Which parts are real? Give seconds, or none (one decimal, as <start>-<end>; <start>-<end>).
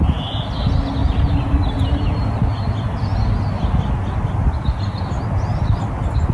0.0-1.0; 1.6-6.3